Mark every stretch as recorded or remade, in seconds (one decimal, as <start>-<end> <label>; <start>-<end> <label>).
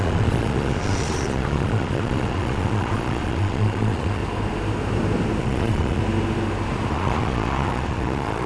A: 0.0-4.2 remade; 4.2-5.4 recorded; 5.4-6.0 remade; 6.0-6.9 recorded; 6.9-8.5 remade